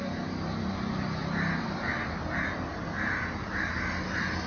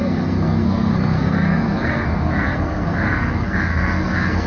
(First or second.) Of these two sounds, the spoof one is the second